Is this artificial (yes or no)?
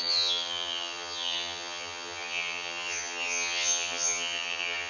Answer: yes